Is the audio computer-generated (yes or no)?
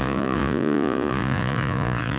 yes